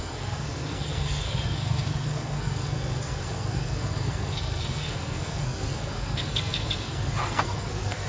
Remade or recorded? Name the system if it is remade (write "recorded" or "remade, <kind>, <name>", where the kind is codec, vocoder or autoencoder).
remade, codec, SNAC